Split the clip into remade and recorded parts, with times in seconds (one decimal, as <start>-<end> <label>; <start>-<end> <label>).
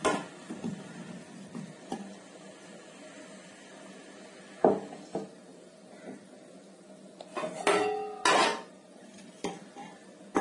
0.0-8.5 recorded; 8.5-9.5 remade; 9.5-10.4 recorded